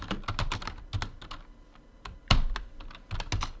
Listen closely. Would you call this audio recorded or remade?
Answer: recorded